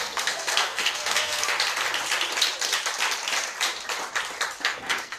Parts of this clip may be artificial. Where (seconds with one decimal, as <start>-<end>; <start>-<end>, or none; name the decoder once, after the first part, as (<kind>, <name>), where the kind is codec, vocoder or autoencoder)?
0.0-1.5 (codec, SNAC); 4.6-5.2